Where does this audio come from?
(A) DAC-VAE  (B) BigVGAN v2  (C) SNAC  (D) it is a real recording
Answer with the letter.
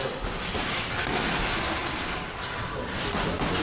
D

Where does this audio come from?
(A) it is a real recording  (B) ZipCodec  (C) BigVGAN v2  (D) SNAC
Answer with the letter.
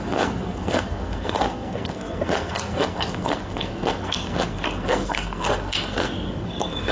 D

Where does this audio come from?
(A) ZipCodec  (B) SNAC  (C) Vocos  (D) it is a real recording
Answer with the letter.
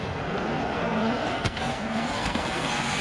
B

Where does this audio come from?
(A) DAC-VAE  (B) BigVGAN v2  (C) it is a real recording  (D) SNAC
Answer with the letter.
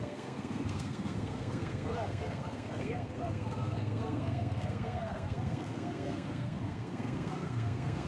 D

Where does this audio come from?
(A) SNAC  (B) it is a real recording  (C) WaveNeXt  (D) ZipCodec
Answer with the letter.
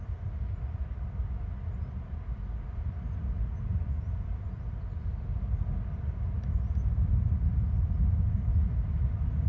B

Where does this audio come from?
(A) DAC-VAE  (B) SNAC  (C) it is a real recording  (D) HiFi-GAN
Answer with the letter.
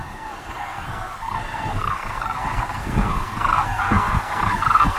B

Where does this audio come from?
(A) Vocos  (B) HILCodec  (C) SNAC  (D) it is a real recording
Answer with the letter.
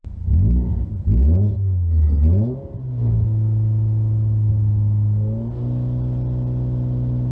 D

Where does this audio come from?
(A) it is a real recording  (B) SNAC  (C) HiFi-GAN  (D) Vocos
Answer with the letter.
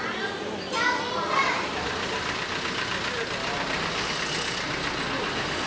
A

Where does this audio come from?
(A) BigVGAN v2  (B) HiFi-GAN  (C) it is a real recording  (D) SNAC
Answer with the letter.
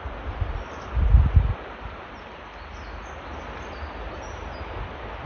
C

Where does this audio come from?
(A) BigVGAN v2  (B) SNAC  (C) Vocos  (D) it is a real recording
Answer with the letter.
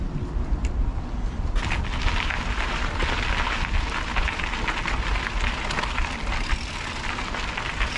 D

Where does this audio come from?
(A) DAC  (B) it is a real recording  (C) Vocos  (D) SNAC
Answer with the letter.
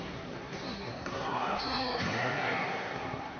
D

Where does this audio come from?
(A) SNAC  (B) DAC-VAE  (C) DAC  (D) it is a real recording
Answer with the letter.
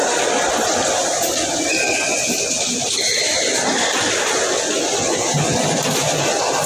D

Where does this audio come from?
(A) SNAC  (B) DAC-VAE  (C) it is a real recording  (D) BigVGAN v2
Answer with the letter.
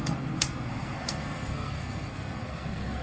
A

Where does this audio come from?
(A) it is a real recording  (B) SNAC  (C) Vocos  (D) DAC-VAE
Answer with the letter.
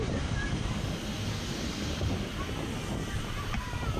A